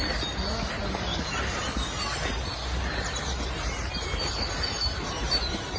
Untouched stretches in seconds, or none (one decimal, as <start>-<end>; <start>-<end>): 0.0-5.8